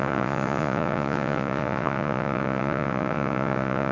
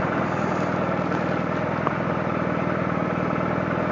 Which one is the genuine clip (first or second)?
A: second